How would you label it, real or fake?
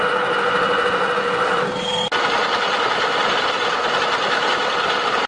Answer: real